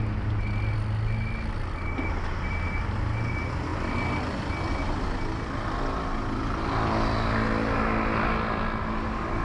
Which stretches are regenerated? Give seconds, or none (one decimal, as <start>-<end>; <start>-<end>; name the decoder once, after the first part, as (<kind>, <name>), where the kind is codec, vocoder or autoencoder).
none